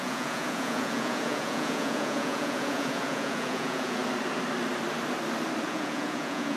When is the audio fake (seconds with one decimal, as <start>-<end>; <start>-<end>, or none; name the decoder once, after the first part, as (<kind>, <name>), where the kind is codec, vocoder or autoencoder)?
0.0-4.0 (vocoder, Vocos); 5.6-6.6